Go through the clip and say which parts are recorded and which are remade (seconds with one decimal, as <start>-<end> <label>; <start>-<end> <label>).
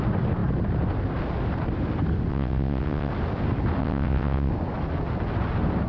0.0-2.3 recorded; 2.3-3.1 remade; 3.1-3.8 recorded; 3.8-4.5 remade; 4.5-5.9 recorded